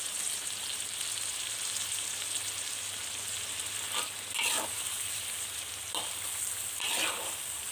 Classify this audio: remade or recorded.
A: recorded